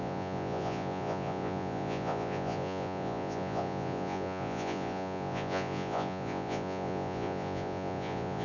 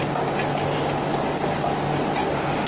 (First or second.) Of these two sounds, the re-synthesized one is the first